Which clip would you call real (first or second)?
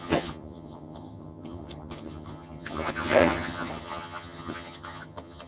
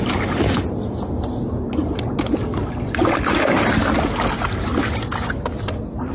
second